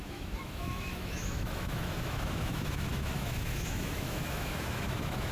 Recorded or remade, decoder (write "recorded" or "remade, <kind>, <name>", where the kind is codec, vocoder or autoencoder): remade, autoencoder, DAC-VAE